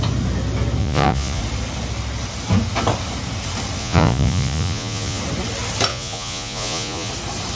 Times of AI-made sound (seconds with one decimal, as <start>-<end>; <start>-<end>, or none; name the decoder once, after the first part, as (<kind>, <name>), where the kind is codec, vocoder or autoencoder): 0.8-1.4 (vocoder, Vocos); 3.8-5.2; 5.9-7.1